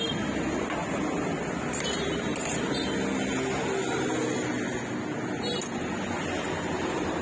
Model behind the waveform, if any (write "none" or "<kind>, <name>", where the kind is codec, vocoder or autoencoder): none